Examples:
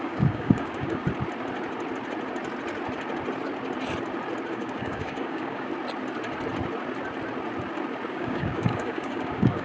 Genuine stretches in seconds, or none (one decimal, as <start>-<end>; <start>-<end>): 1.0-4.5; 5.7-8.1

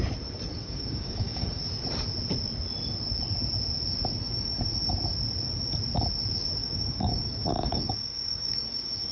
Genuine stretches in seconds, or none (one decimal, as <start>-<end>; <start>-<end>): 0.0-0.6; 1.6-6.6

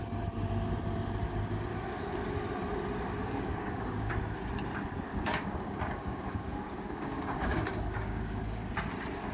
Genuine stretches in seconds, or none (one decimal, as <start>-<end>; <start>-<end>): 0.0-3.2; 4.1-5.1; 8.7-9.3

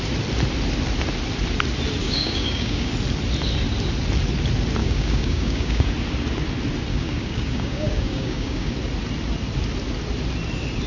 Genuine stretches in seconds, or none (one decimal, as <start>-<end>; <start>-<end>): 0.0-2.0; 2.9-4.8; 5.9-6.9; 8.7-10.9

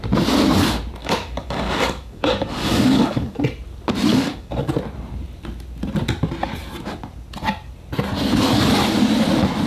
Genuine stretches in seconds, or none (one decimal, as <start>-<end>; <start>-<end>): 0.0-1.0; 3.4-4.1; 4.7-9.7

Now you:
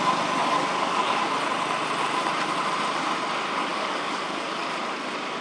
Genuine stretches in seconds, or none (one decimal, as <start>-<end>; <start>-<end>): 0.0-0.4; 1.2-3.7; 4.6-5.4

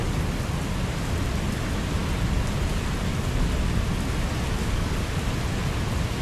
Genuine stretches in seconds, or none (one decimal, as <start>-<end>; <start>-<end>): 0.0-4.6; 5.2-6.2

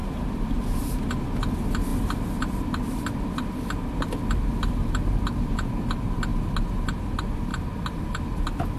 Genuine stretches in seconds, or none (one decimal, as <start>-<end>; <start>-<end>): 0.0-8.8